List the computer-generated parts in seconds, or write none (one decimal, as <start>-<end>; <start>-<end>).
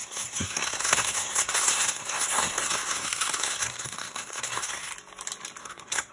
0.0-4.9; 5.6-6.1